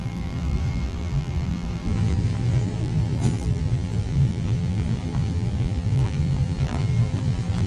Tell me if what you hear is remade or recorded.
remade